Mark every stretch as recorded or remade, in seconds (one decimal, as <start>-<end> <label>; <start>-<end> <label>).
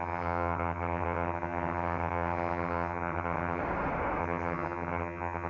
0.0-3.6 remade; 3.6-4.2 recorded; 4.2-5.5 remade